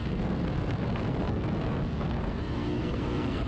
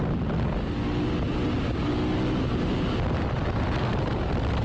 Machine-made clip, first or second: first